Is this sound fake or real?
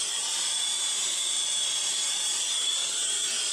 fake